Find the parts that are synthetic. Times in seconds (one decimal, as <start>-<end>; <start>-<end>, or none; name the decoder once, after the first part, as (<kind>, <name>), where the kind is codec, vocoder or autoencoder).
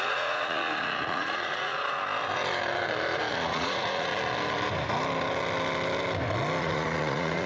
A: 0.0-2.0 (vocoder, Vocos); 3.3-4.1; 6.6-7.5